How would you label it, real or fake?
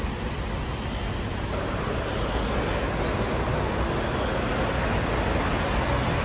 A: real